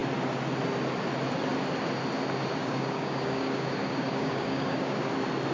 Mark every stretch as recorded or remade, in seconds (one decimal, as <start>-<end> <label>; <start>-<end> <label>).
0.0-2.6 recorded; 2.6-5.1 remade; 5.1-5.5 recorded